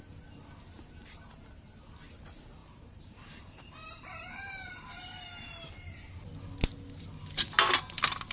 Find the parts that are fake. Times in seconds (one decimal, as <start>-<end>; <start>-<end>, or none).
1.0-1.5; 2.6-5.7